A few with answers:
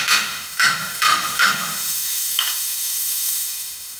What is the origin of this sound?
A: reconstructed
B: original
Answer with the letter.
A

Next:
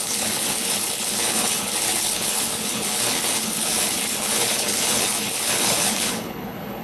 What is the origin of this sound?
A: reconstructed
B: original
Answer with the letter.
A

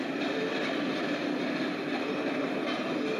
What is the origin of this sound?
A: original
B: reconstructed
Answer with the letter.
A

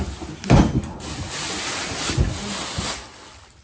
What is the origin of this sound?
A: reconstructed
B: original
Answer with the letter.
B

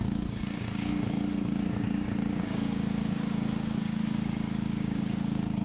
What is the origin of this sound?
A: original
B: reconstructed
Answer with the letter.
B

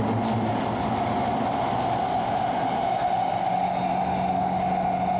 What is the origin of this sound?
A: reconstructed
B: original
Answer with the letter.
B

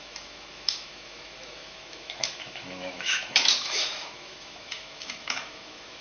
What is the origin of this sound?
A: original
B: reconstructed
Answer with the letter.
B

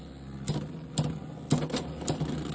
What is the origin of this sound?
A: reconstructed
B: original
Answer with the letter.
B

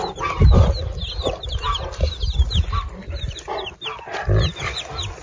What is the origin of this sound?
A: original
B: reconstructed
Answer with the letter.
A